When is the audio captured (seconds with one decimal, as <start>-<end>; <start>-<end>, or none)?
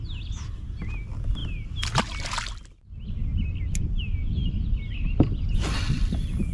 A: 0.0-1.4; 2.0-6.5